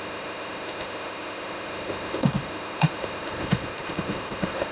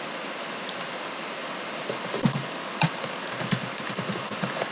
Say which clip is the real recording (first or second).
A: second